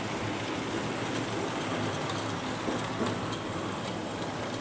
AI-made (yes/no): no